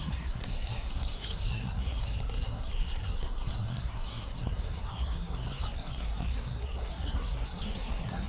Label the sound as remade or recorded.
remade